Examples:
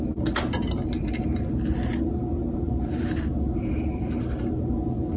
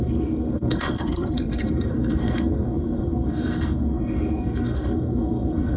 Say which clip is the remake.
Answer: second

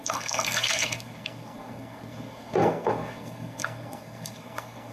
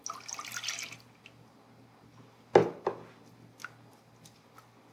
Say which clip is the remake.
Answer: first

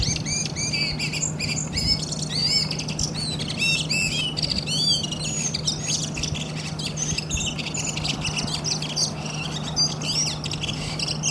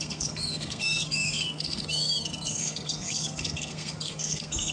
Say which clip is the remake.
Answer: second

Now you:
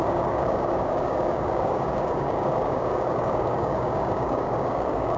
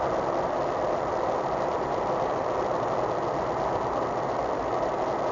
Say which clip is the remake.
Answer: first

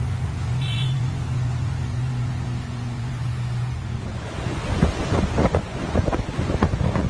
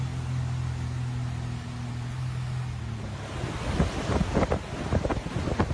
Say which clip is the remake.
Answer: first